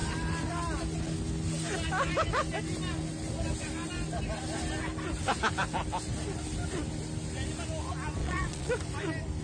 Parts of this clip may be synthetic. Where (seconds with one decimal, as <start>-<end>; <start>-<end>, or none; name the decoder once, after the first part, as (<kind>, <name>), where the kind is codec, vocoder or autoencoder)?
8.2-8.7 (vocoder, Vocos)